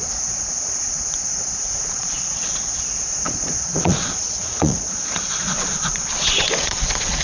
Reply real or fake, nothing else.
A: fake